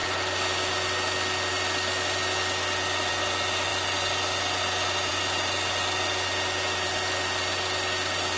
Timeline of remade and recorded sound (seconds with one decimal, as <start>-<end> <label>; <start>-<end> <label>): 0.0-8.4 recorded